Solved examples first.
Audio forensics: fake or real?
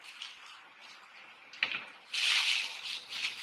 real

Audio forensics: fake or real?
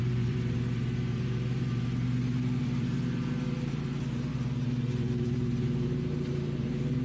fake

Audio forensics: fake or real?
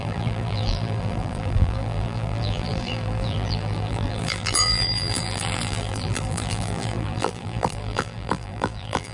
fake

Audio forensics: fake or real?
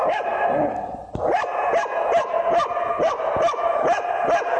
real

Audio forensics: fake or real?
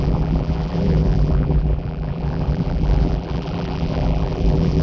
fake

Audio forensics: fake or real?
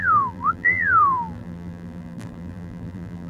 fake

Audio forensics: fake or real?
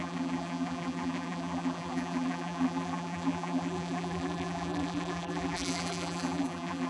fake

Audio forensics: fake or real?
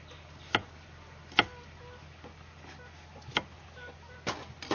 real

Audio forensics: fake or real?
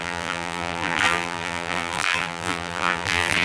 fake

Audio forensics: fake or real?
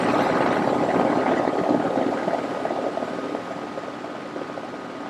real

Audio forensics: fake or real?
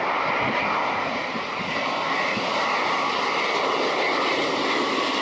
real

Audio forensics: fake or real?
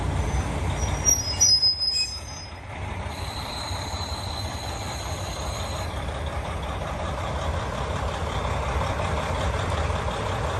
fake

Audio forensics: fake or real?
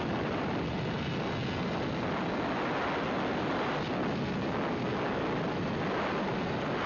real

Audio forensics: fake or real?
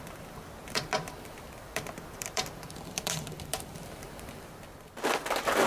fake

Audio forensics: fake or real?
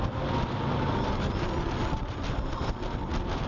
real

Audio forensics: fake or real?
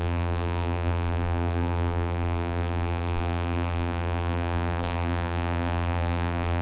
fake